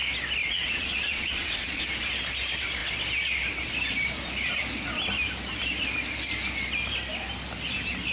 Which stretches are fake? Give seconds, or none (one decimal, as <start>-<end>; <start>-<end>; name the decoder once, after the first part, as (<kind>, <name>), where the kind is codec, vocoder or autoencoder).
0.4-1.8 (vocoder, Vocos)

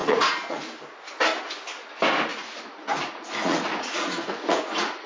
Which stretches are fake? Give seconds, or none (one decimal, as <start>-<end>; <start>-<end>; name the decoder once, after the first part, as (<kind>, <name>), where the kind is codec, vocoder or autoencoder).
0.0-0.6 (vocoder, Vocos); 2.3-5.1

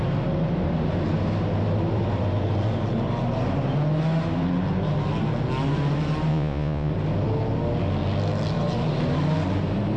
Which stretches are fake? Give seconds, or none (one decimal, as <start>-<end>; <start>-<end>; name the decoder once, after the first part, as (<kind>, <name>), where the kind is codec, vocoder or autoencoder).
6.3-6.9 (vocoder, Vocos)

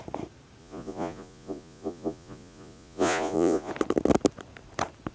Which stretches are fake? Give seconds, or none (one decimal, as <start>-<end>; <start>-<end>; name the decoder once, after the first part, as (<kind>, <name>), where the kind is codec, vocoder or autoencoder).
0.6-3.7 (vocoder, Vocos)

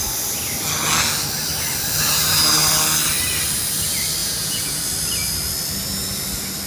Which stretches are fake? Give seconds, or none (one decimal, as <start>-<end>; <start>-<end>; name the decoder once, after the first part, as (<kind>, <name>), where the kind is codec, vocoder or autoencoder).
4.2-4.8 (vocoder, Vocos)